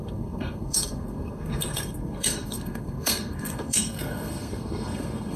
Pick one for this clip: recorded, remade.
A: remade